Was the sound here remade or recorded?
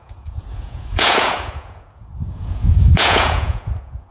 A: remade